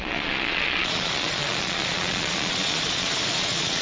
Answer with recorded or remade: remade